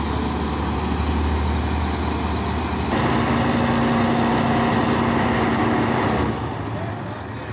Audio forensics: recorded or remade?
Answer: recorded